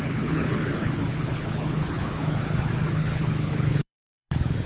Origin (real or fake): fake